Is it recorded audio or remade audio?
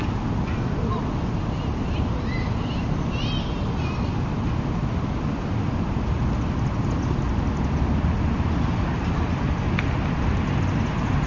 recorded